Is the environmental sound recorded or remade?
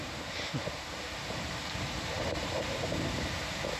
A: remade